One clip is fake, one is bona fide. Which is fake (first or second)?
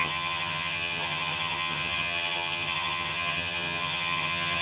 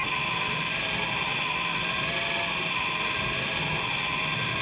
first